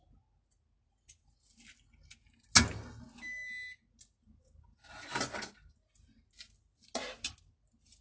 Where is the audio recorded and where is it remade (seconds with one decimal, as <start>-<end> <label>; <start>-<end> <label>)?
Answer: 0.0-8.0 recorded